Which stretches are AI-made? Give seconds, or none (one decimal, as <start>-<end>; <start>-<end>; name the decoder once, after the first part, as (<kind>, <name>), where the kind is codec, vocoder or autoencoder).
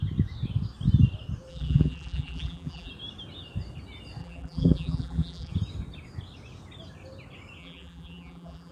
1.5-2.9 (vocoder, BigVGAN v2); 4.2-5.5; 7.6-8.7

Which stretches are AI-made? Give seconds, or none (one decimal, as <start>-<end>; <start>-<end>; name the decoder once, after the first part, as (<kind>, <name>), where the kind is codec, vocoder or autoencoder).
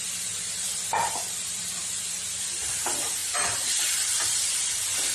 0.0-5.1 (vocoder, BigVGAN v2)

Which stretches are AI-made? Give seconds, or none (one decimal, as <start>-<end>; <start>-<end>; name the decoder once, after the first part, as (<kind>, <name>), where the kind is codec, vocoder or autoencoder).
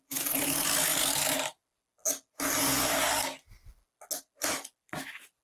0.9-1.6 (vocoder, BigVGAN v2)